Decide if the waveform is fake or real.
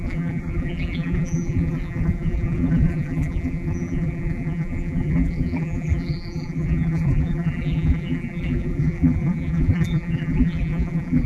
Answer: fake